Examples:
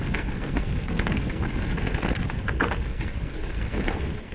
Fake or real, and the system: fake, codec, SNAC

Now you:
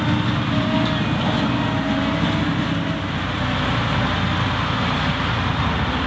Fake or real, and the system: real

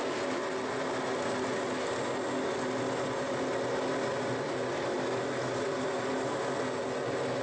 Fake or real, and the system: real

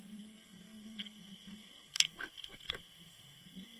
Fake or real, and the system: fake, codec, SNAC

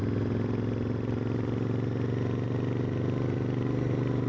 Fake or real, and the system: real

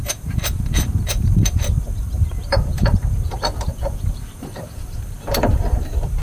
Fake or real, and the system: fake, vocoder, BigVGAN v2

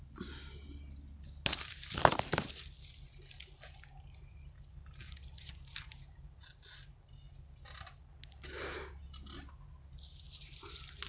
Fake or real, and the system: real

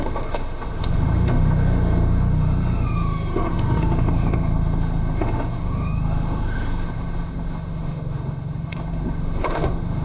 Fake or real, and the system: fake, autoencoder, DAC-VAE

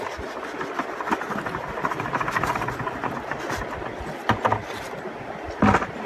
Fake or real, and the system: real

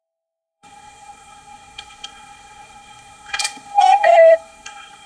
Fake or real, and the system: fake, codec, SNAC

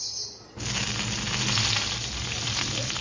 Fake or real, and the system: real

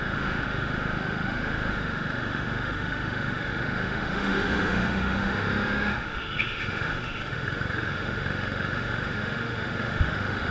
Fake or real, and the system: fake, autoencoder, DAC-VAE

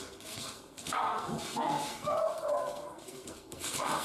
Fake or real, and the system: fake, codec, SNAC